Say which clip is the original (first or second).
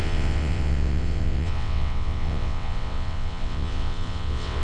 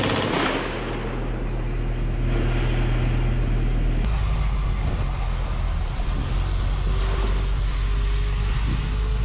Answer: second